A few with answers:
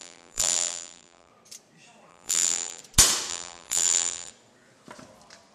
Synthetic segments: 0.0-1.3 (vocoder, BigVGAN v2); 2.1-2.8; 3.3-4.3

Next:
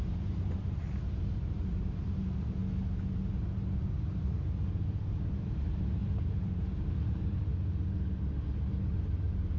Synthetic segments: 0.0-2.6 (vocoder, BigVGAN v2); 4.0-7.5; 8.9-9.6

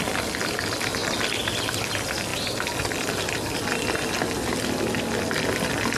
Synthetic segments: none

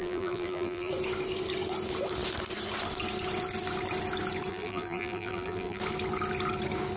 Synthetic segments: 0.0-0.9 (vocoder, BigVGAN v2); 4.5-5.8

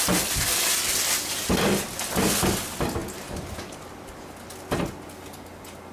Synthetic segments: none

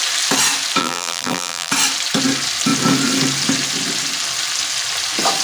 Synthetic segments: 0.8-1.7 (vocoder, BigVGAN v2)

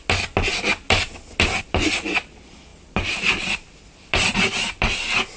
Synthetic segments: none

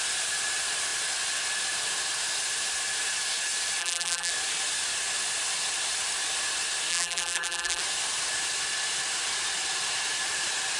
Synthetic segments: 3.8-4.3 (vocoder, BigVGAN v2); 6.9-7.8